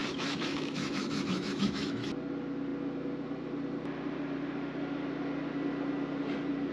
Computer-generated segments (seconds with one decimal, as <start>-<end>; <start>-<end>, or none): 0.0-2.1